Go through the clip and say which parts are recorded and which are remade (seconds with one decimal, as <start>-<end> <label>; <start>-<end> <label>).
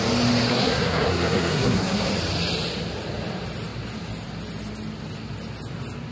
0.0-0.5 recorded; 0.5-2.1 remade; 2.1-6.1 recorded